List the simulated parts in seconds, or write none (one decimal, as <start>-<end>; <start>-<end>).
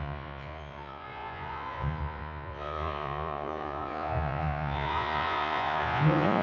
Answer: 0.0-6.4